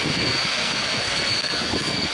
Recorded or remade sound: remade